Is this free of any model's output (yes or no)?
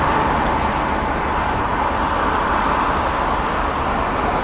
yes